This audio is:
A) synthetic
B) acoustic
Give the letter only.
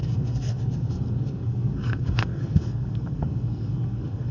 A